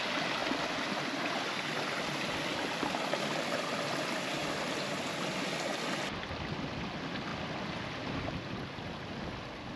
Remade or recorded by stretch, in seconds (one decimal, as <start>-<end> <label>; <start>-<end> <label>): 0.0-9.8 recorded